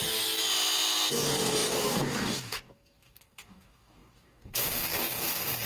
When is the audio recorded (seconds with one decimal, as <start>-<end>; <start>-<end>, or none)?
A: 0.4-1.1